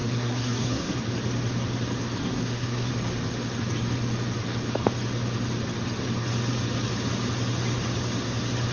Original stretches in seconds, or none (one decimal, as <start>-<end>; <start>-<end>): 1.0-2.2; 2.9-8.7